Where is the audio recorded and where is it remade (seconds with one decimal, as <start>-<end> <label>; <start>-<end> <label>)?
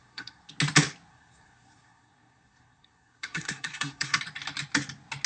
0.0-0.5 remade; 0.5-1.1 recorded; 1.1-4.2 remade; 4.2-5.3 recorded